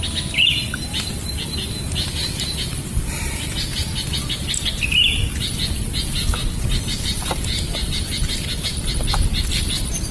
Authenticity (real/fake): real